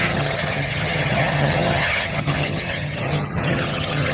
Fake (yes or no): yes